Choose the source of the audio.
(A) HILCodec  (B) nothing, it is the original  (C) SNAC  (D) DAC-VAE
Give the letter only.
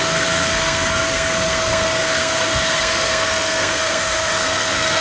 C